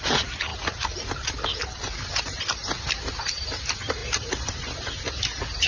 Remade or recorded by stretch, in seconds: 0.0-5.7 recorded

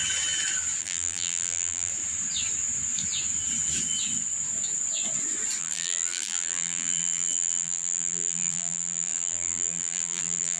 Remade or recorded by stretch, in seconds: 0.0-0.8 recorded; 0.8-1.9 remade; 1.9-5.6 recorded; 5.6-10.6 remade

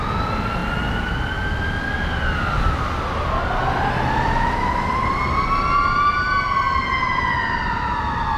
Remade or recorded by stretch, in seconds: 0.0-8.4 recorded